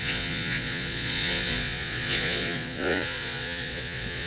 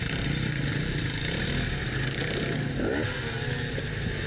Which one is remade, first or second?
first